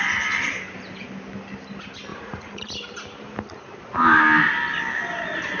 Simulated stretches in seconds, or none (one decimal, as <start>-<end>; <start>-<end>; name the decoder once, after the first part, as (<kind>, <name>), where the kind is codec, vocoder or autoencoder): 2.1-2.7 (vocoder, Vocos)

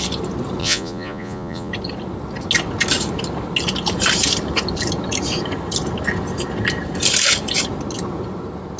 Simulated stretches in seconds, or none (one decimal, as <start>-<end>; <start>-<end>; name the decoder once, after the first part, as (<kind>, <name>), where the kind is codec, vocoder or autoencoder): 0.6-1.7 (vocoder, Vocos)

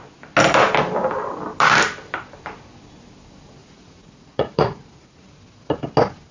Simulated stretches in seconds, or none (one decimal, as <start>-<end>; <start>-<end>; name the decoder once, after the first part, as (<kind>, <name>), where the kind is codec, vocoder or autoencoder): 3.6-5.4 (vocoder, Vocos)

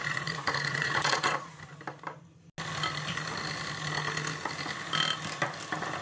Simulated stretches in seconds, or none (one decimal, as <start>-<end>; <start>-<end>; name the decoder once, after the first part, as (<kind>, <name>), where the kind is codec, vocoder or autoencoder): 0.0-1.6 (vocoder, Vocos)

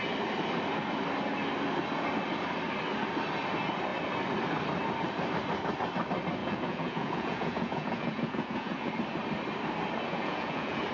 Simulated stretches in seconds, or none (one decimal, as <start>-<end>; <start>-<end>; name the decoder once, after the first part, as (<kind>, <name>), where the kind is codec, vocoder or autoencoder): 6.4-8.9 (vocoder, Vocos); 10.1-10.9